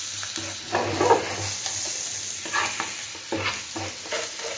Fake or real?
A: real